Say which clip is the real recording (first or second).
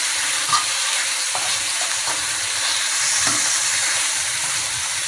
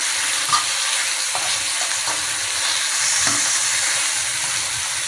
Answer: second